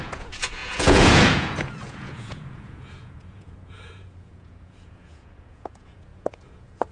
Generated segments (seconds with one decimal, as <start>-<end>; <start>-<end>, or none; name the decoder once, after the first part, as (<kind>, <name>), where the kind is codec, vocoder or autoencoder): 0.0-6.9 (vocoder, Vocos)